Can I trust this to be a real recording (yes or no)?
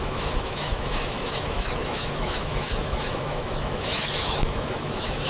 no